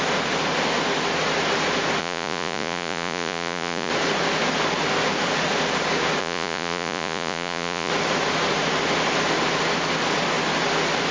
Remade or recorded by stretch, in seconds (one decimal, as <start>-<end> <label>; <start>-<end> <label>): 0.0-2.0 recorded; 2.0-3.9 remade; 3.9-6.2 recorded; 6.2-7.9 remade; 7.9-11.1 recorded